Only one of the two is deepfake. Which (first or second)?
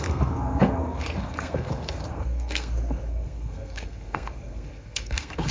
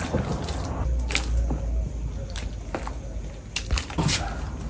first